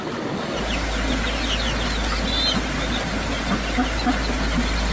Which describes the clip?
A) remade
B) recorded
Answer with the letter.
B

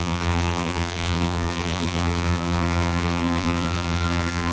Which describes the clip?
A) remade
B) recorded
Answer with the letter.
A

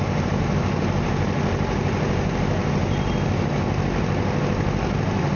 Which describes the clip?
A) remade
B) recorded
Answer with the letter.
B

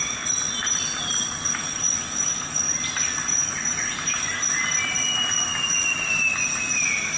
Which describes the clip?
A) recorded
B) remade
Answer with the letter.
A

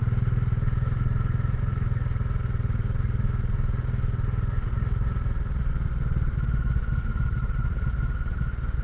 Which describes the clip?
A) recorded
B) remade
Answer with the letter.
A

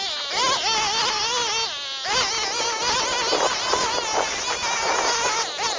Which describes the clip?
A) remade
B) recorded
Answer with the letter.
B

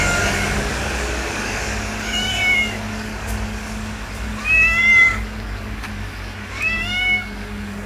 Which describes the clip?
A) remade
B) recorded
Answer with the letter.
A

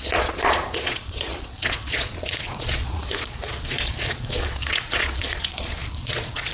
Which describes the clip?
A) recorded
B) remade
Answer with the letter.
B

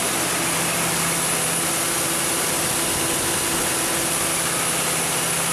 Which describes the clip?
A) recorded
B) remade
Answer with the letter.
A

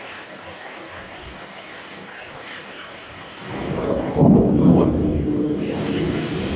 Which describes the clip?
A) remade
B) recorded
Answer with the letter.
A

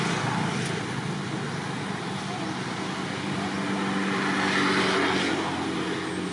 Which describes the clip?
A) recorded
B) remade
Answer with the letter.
A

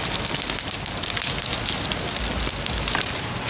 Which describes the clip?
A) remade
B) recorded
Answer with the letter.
B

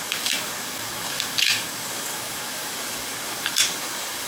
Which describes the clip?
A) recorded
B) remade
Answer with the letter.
B